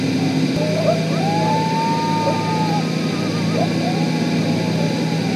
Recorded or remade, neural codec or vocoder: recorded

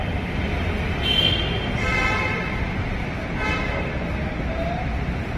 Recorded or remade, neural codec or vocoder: recorded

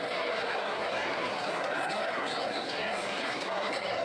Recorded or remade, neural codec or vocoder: remade, codec, SNAC